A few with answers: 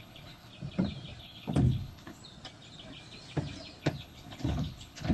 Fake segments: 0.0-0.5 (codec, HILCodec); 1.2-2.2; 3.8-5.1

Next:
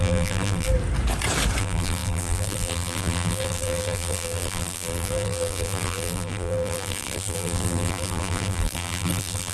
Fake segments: 0.0-0.7 (vocoder, BigVGAN v2); 1.6-9.5

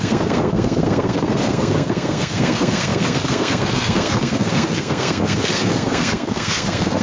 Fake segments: 0.0-7.0 (codec, SNAC)